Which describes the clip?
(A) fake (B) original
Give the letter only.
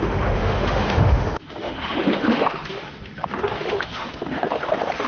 A